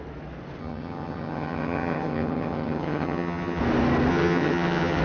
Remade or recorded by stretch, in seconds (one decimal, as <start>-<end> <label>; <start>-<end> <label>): 0.0-0.6 recorded; 0.6-3.6 remade; 3.6-4.1 recorded; 4.1-5.0 remade